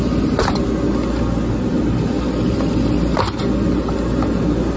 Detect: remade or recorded recorded